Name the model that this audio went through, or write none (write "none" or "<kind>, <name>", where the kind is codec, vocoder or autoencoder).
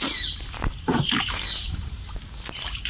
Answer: vocoder, BigVGAN v2